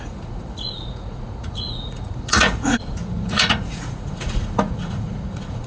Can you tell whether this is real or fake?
fake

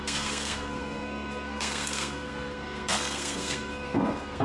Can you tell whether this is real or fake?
fake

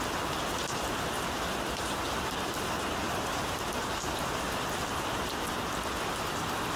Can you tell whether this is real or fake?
real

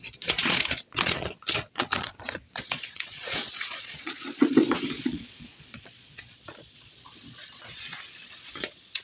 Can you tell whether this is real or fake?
fake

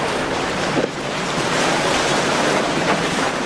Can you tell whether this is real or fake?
fake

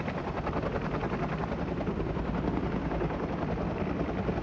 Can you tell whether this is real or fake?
fake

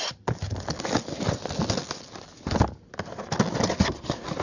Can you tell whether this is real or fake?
real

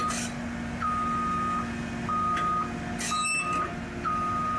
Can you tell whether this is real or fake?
real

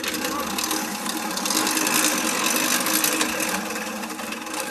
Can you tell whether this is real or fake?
real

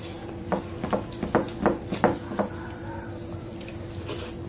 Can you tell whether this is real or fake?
fake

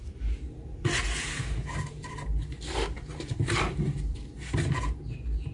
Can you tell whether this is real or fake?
fake